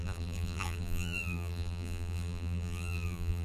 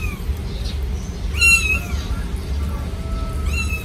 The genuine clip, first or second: second